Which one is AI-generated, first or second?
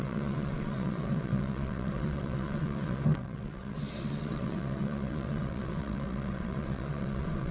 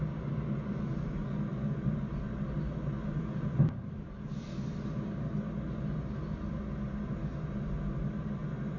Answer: first